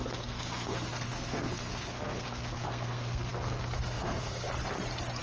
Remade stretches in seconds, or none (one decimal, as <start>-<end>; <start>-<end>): 0.0-4.5